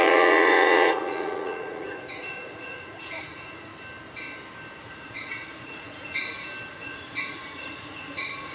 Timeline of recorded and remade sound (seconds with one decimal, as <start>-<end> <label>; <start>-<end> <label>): 0.0-3.7 remade; 3.7-4.8 recorded; 4.8-6.2 remade; 6.2-6.7 recorded; 6.7-8.5 remade